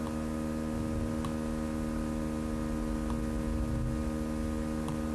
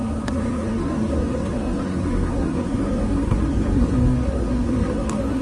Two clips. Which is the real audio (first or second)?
first